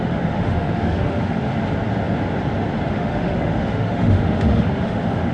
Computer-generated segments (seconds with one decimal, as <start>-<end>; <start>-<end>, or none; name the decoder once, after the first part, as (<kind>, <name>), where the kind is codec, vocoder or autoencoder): 0.0-1.5 (autoencoder, DAC-VAE); 2.9-5.3